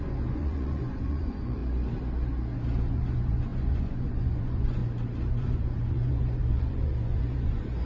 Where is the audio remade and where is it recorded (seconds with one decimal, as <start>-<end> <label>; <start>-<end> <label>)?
0.0-1.6 remade; 1.6-2.8 recorded; 2.8-4.8 remade; 4.8-5.3 recorded; 5.3-7.9 remade